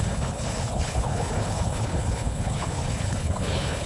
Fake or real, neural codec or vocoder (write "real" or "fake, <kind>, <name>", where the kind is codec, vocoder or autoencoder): fake, codec, HILCodec